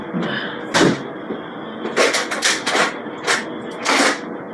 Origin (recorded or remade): recorded